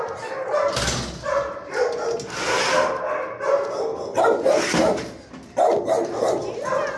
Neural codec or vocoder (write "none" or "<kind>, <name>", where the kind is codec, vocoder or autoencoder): none